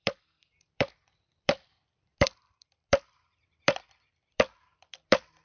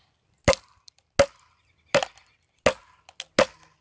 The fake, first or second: first